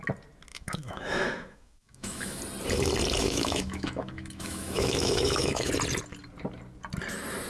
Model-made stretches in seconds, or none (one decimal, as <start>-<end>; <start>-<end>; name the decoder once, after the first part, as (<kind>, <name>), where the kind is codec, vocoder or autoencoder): 0.5-2.4 (autoencoder, DAC-VAE); 3.2-5.7